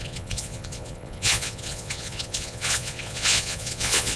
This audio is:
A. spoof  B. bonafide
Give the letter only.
A